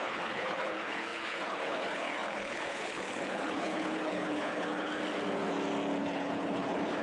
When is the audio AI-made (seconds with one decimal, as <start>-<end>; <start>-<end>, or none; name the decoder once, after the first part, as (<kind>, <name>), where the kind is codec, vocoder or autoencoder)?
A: 0.0-4.9 (codec, HILCodec); 6.0-7.0